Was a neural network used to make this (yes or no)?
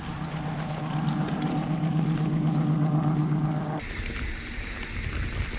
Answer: no